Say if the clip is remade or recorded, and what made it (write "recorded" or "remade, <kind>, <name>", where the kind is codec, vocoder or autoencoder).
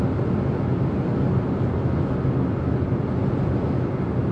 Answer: recorded